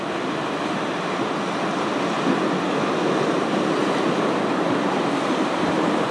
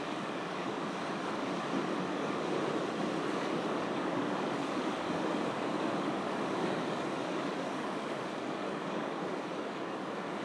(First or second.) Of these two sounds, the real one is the first